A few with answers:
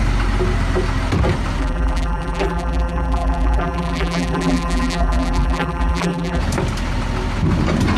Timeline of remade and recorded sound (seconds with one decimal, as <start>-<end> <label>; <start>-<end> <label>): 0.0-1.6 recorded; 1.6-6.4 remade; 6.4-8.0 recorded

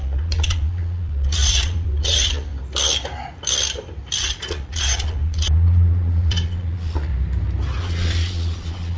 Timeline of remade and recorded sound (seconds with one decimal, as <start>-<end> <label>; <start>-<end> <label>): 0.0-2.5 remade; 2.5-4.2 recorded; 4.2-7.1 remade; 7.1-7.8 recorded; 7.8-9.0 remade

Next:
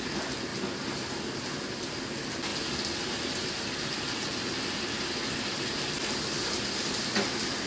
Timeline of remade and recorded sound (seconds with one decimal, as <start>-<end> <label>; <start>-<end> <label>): 0.0-7.7 recorded

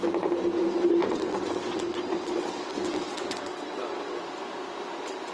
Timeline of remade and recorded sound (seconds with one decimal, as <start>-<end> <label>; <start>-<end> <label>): 0.0-1.0 recorded; 1.0-4.2 remade; 4.2-5.3 recorded